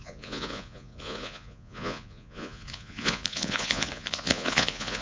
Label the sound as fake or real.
fake